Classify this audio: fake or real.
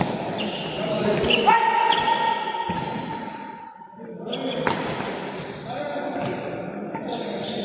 real